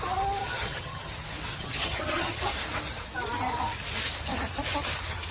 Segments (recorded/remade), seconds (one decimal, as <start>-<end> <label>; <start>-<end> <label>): 0.0-0.4 recorded; 0.4-1.1 remade; 1.1-1.5 recorded; 1.5-2.4 remade; 2.4-5.3 recorded